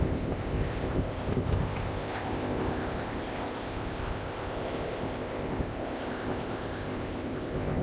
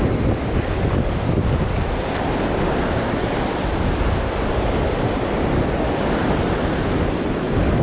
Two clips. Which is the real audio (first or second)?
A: second